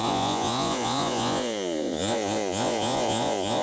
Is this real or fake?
fake